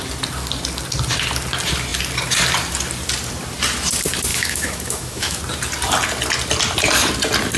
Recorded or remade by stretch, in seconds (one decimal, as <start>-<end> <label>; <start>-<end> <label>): 0.0-4.3 recorded; 4.3-5.4 remade; 5.4-7.6 recorded